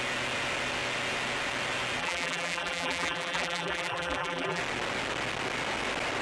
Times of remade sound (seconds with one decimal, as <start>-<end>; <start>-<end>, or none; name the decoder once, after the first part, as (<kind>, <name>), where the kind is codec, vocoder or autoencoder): 2.0-4.6 (vocoder, BigVGAN v2)